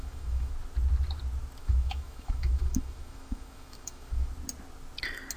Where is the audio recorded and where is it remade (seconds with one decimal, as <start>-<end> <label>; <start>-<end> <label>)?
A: 0.0-0.5 remade; 0.5-1.6 recorded; 1.6-4.3 remade; 4.3-5.4 recorded